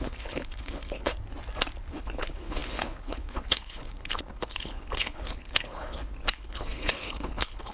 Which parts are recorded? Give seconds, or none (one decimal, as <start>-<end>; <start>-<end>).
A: 1.1-1.9